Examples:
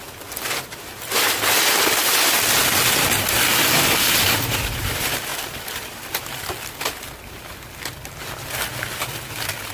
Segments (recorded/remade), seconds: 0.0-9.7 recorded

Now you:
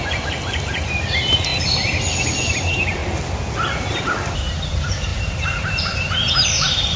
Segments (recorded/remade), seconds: 0.0-1.5 remade; 1.5-2.5 recorded; 2.5-3.0 remade; 3.0-3.9 recorded; 3.9-7.0 remade

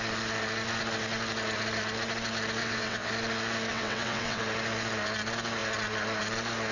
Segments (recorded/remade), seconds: 0.0-2.6 recorded; 2.6-3.1 remade; 3.1-3.7 recorded; 3.7-4.4 remade; 4.4-6.7 recorded

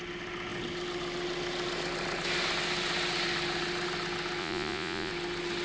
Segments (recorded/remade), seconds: 0.0-4.4 recorded; 4.4-5.1 remade; 5.1-5.6 recorded

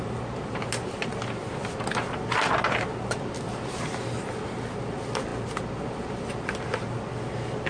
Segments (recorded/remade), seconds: 0.0-7.7 recorded

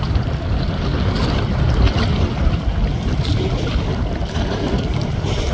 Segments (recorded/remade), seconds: 0.0-0.9 remade; 0.9-3.5 recorded; 3.5-5.5 remade

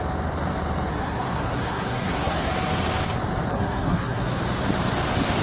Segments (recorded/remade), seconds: 0.0-0.9 recorded; 0.9-2.5 remade; 2.5-3.5 recorded; 3.5-4.4 remade; 4.4-5.4 recorded